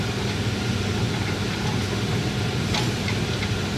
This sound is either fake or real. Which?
real